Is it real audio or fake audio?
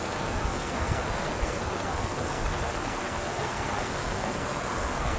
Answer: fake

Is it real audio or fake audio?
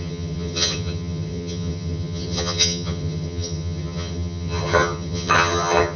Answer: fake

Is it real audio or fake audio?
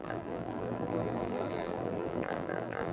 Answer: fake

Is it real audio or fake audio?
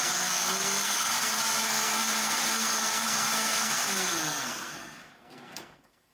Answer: fake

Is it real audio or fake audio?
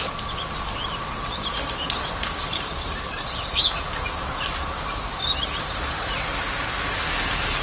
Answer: real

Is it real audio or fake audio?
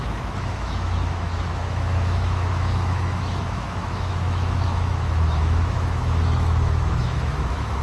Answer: fake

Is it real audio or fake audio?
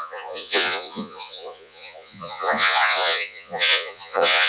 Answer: fake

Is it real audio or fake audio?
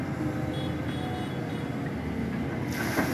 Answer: real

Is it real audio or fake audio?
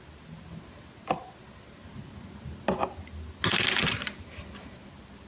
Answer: real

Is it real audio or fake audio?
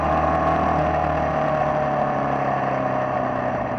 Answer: real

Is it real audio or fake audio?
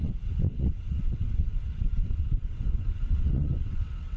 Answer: fake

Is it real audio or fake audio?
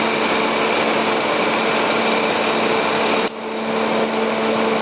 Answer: real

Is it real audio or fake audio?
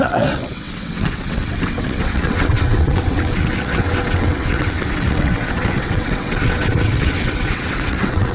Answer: fake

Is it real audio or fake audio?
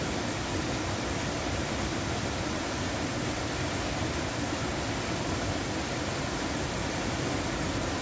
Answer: real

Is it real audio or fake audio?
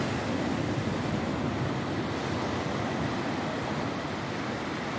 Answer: real